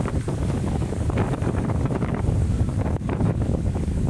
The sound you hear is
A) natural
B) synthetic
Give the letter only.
B